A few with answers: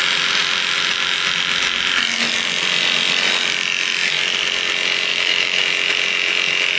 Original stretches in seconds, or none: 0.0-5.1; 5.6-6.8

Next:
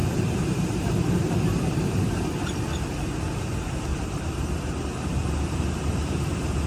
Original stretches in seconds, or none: 2.6-3.9

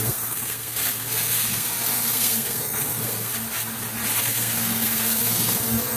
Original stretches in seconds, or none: 3.3-4.2

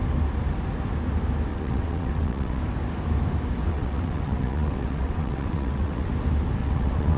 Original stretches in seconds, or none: 0.0-1.5; 2.6-3.7; 6.1-6.6

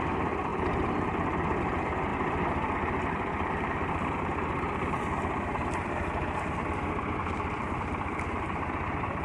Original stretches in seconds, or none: 0.5-1.6

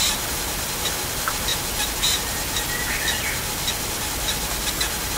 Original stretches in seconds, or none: 0.0-5.2

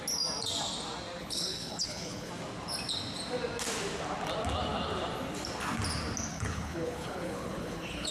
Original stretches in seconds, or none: 0.0-1.2; 2.3-6.3

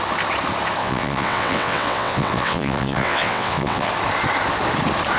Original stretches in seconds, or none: 0.0-0.8; 3.9-5.2